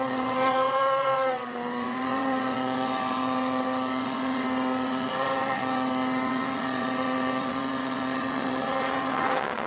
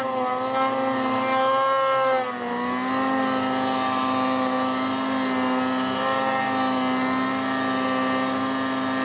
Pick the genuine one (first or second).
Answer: second